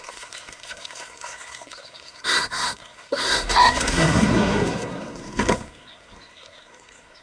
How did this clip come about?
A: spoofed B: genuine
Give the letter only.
A